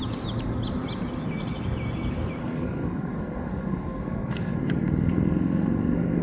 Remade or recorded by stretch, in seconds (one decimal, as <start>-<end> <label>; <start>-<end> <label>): 0.0-2.4 recorded; 2.4-6.2 remade